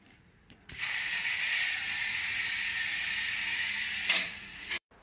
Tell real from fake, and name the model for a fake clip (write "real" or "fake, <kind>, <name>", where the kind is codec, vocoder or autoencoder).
fake, vocoder, Vocos